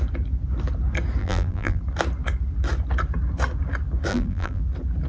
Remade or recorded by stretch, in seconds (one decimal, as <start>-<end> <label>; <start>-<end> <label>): 0.0-1.2 recorded; 1.2-1.8 remade; 1.8-4.1 recorded; 4.1-4.6 remade; 4.6-5.1 recorded